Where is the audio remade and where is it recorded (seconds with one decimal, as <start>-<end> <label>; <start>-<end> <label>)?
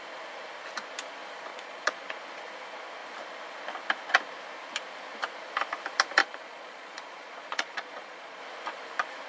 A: 0.0-1.5 recorded; 1.5-2.2 remade; 2.2-6.2 recorded; 6.2-8.4 remade; 8.4-9.3 recorded